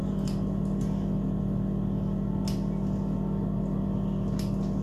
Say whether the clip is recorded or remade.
recorded